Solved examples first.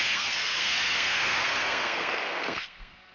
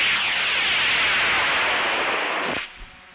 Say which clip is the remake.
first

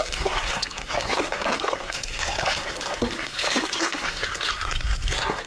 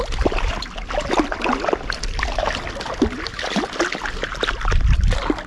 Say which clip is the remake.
first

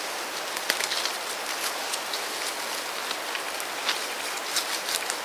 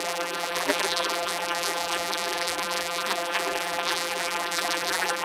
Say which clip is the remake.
second